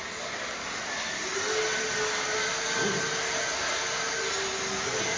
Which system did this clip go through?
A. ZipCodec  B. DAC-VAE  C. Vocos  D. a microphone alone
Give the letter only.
D